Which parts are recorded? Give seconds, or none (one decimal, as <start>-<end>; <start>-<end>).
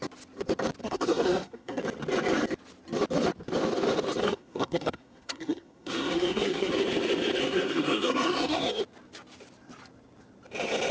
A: 0.0-0.8; 1.8-4.2; 6.7-7.4; 8.8-10.9